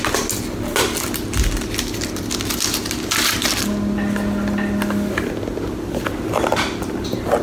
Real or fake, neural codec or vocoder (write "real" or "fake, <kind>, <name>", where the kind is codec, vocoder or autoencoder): real